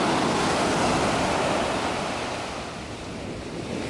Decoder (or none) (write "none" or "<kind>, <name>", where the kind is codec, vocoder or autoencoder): none